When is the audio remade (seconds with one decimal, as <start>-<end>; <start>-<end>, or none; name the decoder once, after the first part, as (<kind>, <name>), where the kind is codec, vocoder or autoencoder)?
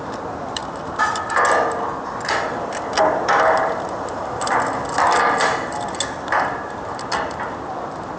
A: none